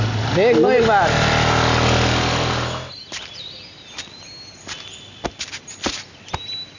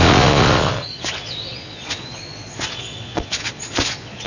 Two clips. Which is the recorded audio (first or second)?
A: first